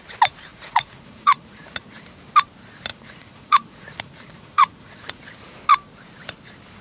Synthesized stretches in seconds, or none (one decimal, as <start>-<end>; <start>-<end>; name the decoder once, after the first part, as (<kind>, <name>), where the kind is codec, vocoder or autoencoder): 0.5-2.0 (vocoder, Vocos); 2.9-5.2